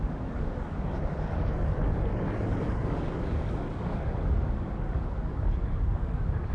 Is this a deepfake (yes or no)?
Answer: yes